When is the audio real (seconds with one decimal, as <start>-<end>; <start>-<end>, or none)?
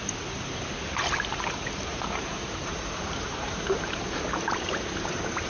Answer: 0.0-1.9